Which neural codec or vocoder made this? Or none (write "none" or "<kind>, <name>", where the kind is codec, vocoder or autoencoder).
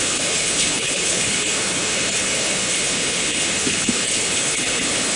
codec, HILCodec